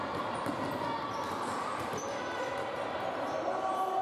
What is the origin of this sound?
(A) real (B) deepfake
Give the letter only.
A